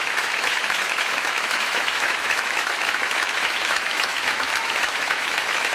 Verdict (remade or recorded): remade